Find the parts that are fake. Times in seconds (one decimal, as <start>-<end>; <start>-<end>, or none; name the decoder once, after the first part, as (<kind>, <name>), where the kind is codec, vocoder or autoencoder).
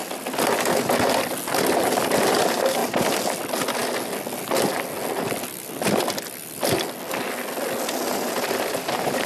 none